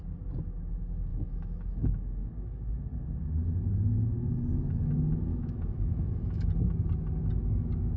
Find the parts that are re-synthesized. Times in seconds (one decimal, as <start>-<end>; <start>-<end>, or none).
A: 1.1-2.7; 5.3-6.5